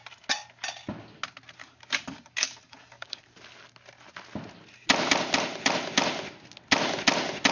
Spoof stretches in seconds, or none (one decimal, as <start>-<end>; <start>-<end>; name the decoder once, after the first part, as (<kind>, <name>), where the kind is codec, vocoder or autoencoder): 1.6-3.3 (codec, DAC)